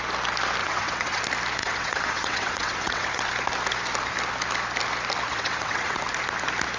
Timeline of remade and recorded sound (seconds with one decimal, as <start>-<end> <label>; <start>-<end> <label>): 0.0-0.6 recorded; 0.6-1.2 remade; 1.2-1.6 recorded; 1.6-3.2 remade; 3.2-5.3 recorded; 5.3-6.0 remade; 6.0-6.8 recorded